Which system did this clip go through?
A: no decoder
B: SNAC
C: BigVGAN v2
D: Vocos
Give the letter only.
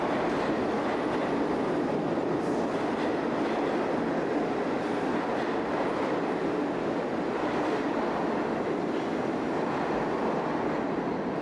A